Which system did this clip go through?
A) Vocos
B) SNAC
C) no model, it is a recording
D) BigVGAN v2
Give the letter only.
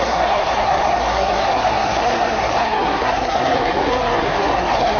B